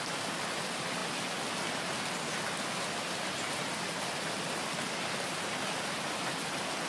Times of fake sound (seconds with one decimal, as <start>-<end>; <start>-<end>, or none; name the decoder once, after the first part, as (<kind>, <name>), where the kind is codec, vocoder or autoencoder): none

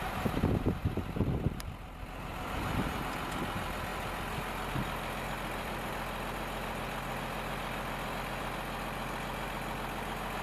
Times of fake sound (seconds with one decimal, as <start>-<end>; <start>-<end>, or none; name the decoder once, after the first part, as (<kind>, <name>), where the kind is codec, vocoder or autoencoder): 0.8-3.2 (vocoder, BigVGAN v2); 3.9-8.1

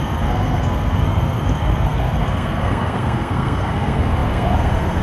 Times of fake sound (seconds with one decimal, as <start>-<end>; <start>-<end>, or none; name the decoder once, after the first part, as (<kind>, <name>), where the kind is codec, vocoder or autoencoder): 0.0-5.0 (codec, SNAC)

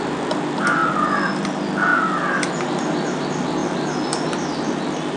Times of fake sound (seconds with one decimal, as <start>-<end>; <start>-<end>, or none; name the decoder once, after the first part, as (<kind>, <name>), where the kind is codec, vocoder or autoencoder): 0.8-1.3 (vocoder, BigVGAN v2)

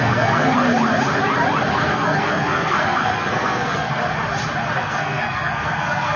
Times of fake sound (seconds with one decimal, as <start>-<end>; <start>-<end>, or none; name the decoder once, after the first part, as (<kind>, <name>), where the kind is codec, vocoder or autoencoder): 0.0-0.6 (codec, SNAC); 1.7-4.0; 4.7-6.2

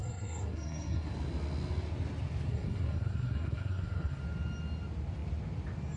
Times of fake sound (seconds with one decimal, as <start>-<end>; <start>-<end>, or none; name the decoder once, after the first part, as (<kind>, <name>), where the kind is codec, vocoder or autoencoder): 0.0-1.1 (codec, SNAC); 2.5-4.2

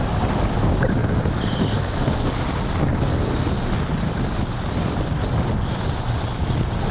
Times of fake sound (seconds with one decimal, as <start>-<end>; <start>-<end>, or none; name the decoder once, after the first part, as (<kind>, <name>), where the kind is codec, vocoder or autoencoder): none